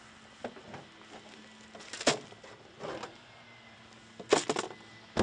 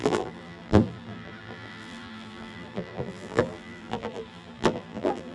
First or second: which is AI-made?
second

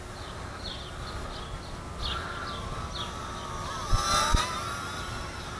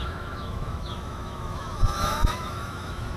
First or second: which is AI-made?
second